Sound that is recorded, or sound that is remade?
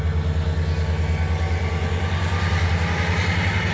recorded